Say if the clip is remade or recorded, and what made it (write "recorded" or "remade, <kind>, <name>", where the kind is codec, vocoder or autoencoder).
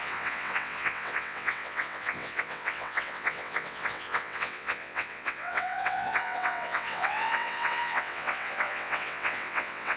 remade, vocoder, WaveNeXt